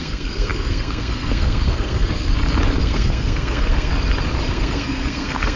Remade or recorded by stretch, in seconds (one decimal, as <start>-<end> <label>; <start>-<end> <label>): 0.0-2.3 remade; 2.3-2.8 recorded; 2.8-3.9 remade; 3.9-4.5 recorded; 4.5-5.6 remade